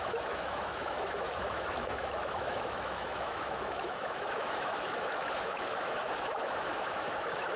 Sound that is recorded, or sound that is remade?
remade